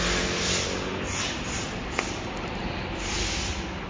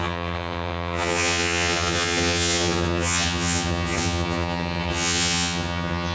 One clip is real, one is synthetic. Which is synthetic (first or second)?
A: second